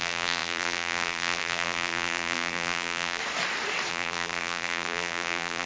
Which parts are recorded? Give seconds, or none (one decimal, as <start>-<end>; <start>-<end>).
3.2-3.9